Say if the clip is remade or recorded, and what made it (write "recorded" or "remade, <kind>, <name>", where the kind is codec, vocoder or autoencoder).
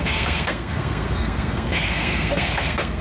remade, codec, SNAC